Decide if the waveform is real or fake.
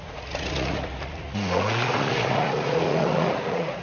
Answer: fake